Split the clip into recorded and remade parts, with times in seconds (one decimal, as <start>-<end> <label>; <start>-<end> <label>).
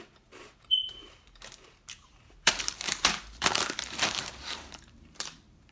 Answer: 0.0-5.7 remade